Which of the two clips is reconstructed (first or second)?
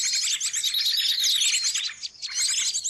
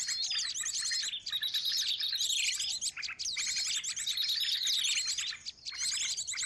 second